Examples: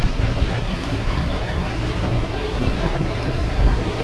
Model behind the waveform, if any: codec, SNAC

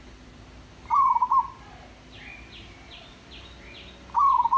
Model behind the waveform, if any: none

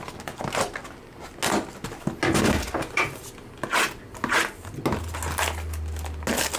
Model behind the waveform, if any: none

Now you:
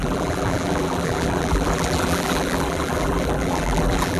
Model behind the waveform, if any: vocoder, BigVGAN v2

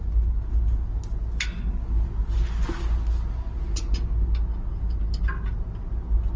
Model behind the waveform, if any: none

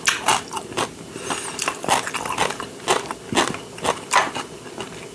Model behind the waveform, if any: none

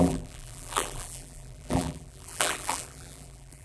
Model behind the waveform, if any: vocoder, BigVGAN v2